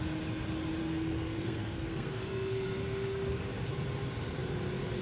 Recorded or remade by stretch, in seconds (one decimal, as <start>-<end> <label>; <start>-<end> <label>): 0.0-0.8 recorded; 0.8-3.3 remade; 3.3-5.0 recorded